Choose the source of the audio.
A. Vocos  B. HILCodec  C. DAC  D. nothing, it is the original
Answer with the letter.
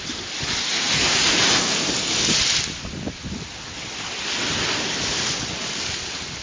D